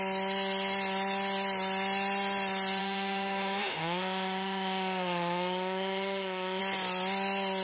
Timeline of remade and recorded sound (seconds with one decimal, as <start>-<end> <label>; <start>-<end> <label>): 0.0-2.8 recorded; 2.8-6.6 remade; 6.6-7.6 recorded